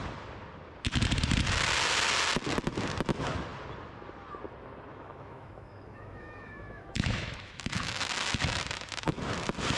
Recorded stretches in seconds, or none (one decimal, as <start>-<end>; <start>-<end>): 0.0-4.9; 8.0-9.8